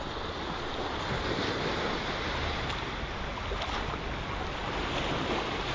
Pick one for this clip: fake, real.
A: real